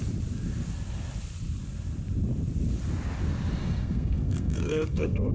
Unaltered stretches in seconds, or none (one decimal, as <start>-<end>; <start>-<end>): 0.0-3.6